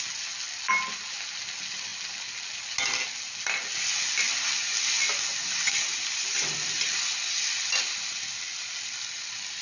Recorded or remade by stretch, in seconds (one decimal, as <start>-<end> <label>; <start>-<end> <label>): 0.0-9.6 recorded

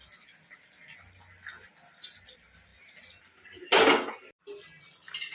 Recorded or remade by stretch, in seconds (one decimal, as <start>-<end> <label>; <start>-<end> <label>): 0.0-5.3 recorded

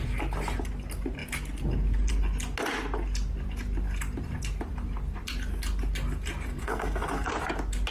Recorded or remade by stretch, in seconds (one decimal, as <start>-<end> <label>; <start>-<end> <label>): 0.0-6.6 recorded; 6.6-7.3 remade; 7.3-7.9 recorded

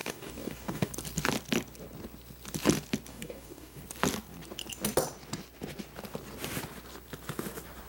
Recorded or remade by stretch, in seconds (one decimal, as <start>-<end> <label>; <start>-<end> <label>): 0.0-0.9 remade; 0.9-3.1 recorded; 3.1-3.8 remade; 3.8-7.9 recorded

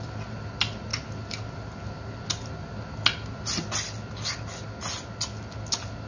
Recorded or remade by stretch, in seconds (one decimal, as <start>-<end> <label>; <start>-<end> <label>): 0.0-6.1 recorded

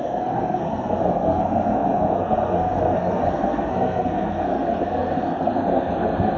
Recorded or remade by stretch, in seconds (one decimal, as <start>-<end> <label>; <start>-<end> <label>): 0.0-6.4 remade

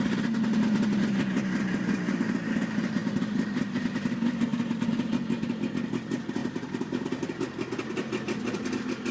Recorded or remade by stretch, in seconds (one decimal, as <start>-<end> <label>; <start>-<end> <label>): 0.0-4.5 recorded; 4.5-5.1 remade; 5.1-6.4 recorded; 6.4-6.9 remade; 6.9-9.1 recorded